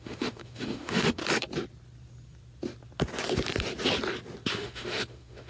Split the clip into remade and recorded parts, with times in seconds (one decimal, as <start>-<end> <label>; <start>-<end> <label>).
0.0-1.2 remade; 1.2-4.5 recorded; 4.5-5.5 remade